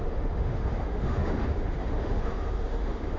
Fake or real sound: fake